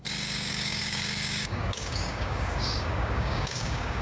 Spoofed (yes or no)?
yes